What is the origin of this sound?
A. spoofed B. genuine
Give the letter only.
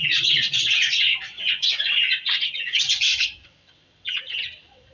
A